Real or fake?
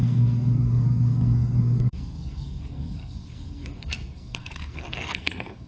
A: fake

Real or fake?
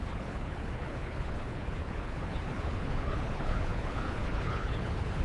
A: fake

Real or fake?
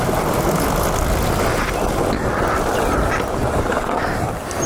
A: real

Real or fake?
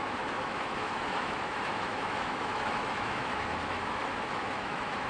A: fake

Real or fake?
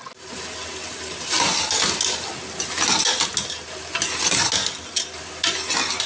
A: real